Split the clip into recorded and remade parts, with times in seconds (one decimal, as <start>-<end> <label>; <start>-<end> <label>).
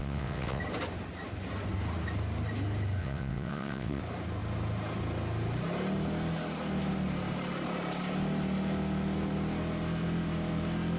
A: 0.0-0.6 remade; 0.6-3.0 recorded; 3.0-4.0 remade; 4.0-11.0 recorded